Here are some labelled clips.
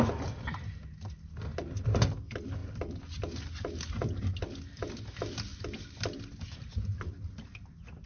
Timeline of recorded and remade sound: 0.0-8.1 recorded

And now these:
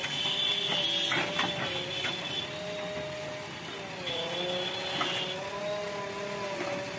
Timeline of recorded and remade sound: 0.0-7.0 recorded

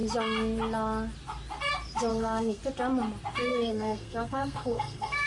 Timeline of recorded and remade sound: 0.0-2.1 recorded; 2.1-2.6 remade; 2.6-3.4 recorded; 3.4-5.3 remade

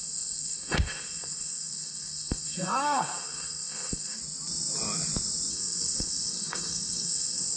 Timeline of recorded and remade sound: 0.0-4.2 remade; 4.2-5.5 recorded; 5.5-7.6 remade

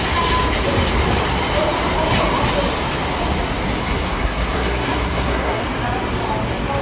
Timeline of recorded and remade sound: 0.0-3.8 recorded; 3.8-5.6 remade; 5.6-6.8 recorded

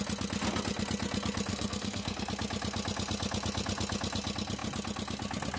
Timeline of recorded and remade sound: 0.0-1.5 recorded; 1.5-2.3 remade; 2.3-5.6 recorded

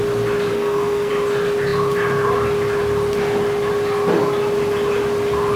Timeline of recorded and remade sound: 0.0-0.5 recorded; 0.5-1.1 remade; 1.1-5.6 recorded

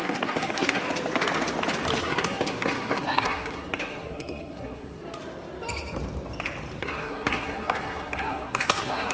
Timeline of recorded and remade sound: 0.0-0.8 remade; 0.8-2.0 recorded; 2.0-5.0 remade; 5.0-6.8 recorded; 6.8-9.1 remade